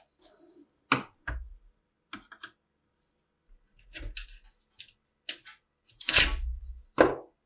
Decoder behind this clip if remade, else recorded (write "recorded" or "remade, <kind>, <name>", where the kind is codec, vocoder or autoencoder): recorded